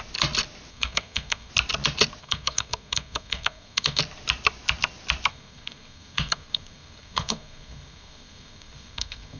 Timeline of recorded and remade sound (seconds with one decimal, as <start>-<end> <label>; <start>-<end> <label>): 0.0-0.7 recorded; 0.7-1.5 remade; 1.5-2.2 recorded; 2.2-4.0 remade; 4.0-5.3 recorded; 5.3-9.4 remade